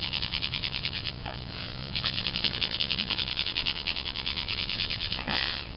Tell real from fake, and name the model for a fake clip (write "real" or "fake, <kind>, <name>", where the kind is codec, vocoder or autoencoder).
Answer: fake, vocoder, WaveNeXt